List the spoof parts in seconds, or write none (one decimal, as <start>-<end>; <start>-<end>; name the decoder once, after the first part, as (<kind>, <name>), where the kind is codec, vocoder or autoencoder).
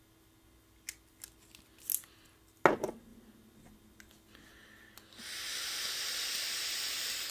none